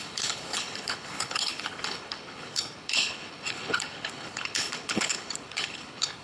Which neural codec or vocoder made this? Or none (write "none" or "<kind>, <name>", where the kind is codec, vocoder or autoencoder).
codec, HILCodec